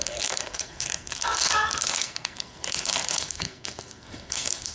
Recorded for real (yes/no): no